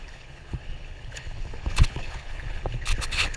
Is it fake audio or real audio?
fake